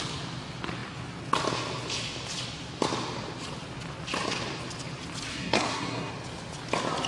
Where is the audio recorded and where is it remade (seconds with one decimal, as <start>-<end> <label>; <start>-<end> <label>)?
0.0-5.3 recorded; 5.3-6.1 remade; 6.1-7.1 recorded